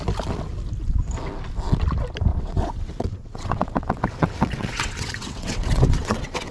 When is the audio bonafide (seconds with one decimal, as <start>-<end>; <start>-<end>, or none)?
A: 0.0-2.3